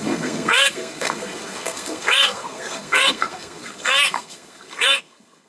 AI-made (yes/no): yes